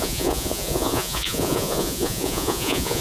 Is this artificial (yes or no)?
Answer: yes